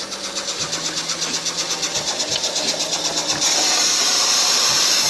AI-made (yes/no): no